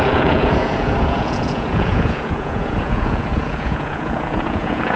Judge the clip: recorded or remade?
remade